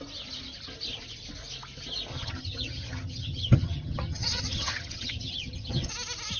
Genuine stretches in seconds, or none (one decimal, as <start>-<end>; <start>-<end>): 0.0-2.1; 5.9-6.4